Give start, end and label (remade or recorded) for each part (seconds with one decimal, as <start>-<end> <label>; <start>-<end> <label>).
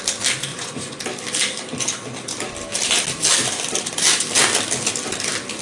0.0-0.5 recorded; 0.5-1.0 remade; 1.0-5.6 recorded